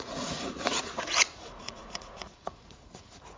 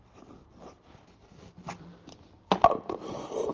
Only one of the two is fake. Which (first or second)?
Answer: first